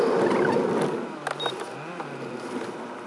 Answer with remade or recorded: recorded